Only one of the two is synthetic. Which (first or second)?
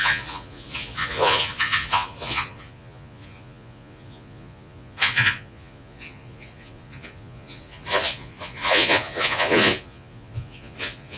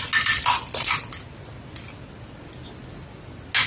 first